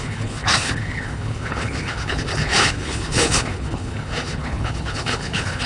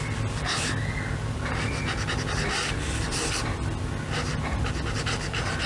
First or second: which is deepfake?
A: first